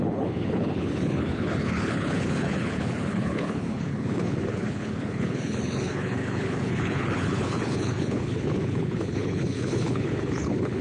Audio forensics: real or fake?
fake